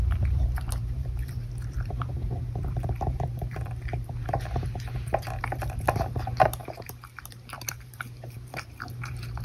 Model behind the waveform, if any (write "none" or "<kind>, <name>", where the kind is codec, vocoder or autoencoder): vocoder, BigVGAN v2